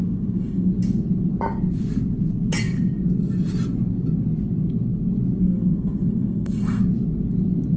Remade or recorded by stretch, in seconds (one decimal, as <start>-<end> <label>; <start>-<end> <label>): 0.0-0.7 remade; 0.7-5.4 recorded; 5.4-6.8 remade; 6.8-7.8 recorded